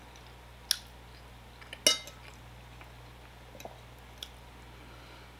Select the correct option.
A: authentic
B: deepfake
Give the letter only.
A